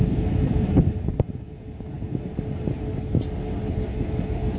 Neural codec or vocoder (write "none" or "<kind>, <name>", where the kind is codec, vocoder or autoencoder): none